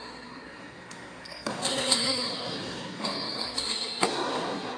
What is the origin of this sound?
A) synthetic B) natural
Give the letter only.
A